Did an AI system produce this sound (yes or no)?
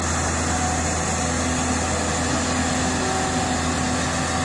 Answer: no